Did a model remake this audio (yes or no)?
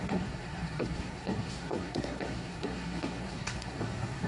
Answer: yes